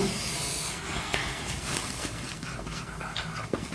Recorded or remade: remade